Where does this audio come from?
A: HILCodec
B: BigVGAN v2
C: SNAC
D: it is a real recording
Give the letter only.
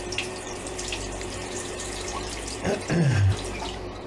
B